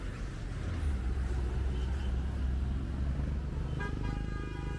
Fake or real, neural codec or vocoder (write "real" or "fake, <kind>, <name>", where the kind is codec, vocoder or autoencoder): real